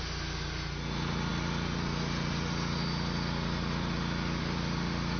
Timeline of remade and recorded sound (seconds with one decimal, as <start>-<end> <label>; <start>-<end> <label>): 0.0-5.2 recorded